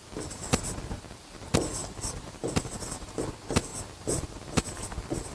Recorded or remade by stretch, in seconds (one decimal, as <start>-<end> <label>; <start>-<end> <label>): 0.0-1.8 recorded; 1.8-2.8 remade; 2.8-3.7 recorded; 3.7-4.3 remade; 4.3-5.3 recorded